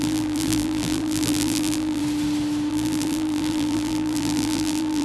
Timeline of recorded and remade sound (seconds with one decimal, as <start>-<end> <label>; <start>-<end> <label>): 0.0-2.0 remade; 2.0-2.7 recorded; 2.7-5.0 remade